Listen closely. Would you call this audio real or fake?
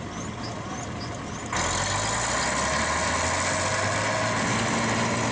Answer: real